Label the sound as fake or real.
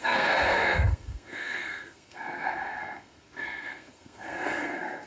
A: fake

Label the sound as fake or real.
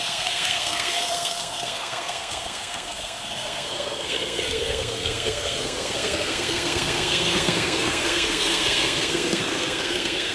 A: fake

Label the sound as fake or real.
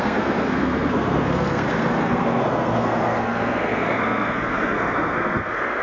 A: fake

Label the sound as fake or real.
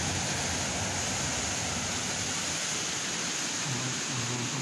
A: real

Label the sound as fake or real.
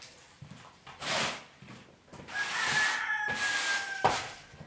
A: real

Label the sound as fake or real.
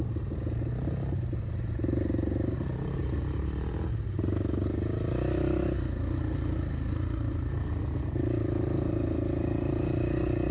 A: real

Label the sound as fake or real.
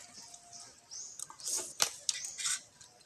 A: real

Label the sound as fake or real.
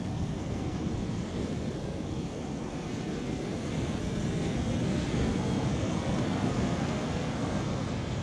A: fake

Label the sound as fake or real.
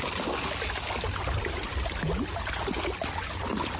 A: real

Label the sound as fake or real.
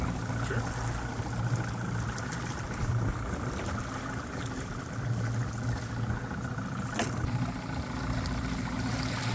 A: real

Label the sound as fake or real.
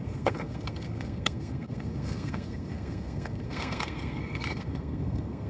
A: fake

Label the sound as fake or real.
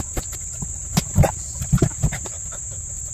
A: real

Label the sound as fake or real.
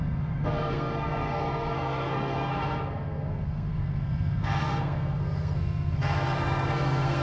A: fake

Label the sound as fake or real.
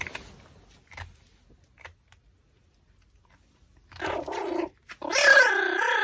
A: real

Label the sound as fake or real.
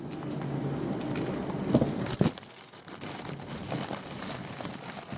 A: real